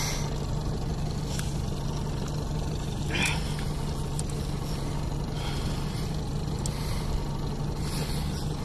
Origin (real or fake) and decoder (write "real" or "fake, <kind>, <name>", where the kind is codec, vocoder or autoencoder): real